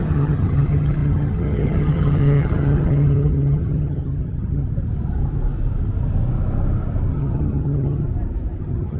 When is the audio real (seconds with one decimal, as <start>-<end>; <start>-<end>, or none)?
4.7-7.1; 8.1-8.6